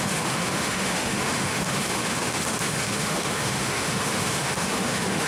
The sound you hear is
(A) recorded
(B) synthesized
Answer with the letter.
B